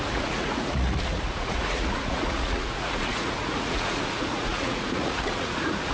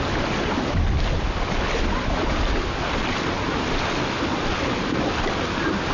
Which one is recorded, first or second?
second